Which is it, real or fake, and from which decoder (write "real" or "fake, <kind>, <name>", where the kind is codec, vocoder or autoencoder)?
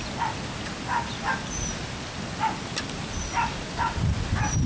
real